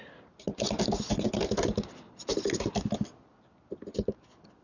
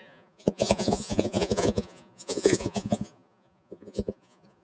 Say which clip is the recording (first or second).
first